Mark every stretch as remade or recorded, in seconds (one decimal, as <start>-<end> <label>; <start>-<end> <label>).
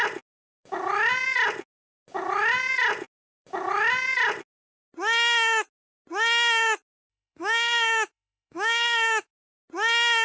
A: 0.0-7.1 recorded; 7.1-9.3 remade; 9.3-10.2 recorded